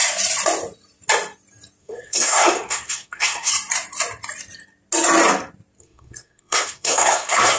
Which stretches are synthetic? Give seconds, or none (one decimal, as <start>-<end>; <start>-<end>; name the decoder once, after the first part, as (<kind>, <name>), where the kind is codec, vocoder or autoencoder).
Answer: 1.8-3.5 (codec, SNAC); 5.8-7.6